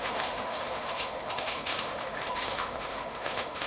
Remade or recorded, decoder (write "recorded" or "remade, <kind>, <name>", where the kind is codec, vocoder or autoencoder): remade, autoencoder, DAC-VAE